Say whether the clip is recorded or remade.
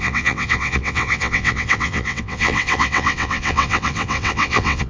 remade